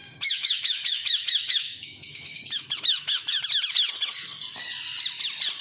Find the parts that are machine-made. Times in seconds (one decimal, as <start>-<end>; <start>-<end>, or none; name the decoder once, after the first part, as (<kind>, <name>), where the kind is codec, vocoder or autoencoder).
0.0-3.4 (autoencoder, DAC-VAE)